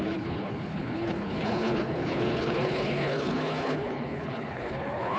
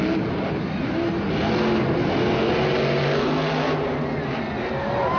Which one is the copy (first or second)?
first